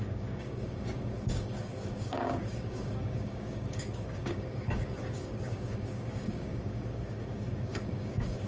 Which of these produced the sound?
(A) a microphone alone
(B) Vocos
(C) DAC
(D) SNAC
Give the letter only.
C